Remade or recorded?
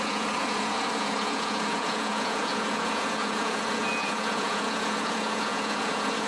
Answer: remade